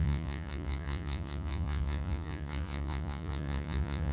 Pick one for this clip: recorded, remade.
remade